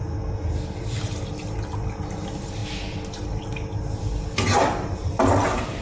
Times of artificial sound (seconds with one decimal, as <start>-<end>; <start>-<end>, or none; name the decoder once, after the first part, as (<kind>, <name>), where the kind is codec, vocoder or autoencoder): 4.5-5.3 (vocoder, BigVGAN v2)